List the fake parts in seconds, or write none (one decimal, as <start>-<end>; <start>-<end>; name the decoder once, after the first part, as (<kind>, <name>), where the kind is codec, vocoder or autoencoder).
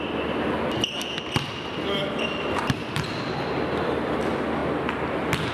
none